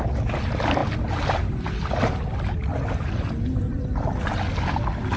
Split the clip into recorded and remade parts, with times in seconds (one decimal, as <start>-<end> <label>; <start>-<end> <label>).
0.0-5.2 recorded